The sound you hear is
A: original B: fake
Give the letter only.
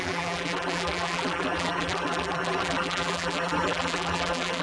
B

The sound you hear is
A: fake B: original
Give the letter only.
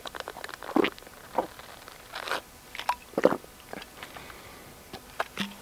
B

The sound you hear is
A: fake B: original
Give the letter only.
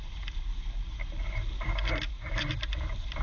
A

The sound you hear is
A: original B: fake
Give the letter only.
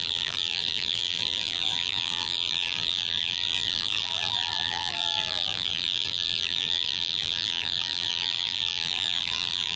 B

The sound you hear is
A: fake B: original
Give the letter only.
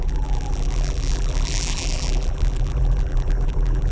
A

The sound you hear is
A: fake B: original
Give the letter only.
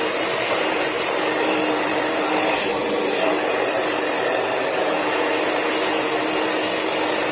B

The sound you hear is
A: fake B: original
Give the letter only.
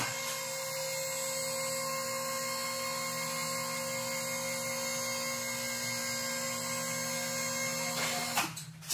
B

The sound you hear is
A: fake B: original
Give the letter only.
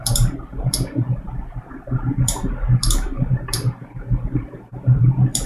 A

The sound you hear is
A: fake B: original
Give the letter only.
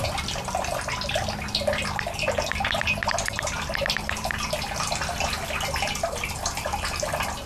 B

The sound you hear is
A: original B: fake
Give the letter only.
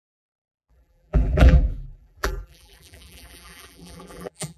B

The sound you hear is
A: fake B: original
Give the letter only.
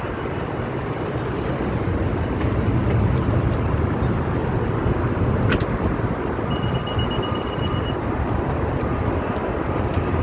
B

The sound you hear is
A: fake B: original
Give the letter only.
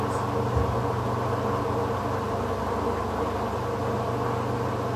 B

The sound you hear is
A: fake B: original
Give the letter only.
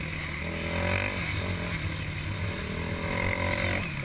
B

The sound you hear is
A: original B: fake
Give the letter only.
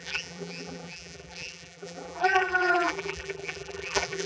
B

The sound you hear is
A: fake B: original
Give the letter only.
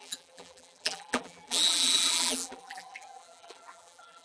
A